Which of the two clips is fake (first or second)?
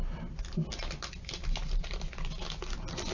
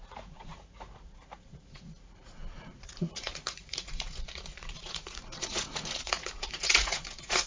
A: second